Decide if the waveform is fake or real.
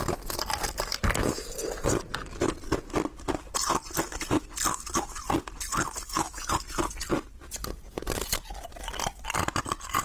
real